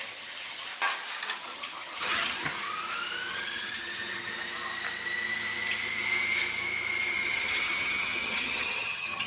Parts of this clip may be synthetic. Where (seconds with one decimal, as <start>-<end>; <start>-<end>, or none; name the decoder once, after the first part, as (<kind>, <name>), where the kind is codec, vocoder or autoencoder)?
0.0-0.7 (vocoder, HiFi-GAN); 1.4-2.5; 3.3-4.3; 7.1-9.3